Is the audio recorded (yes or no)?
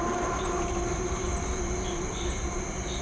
yes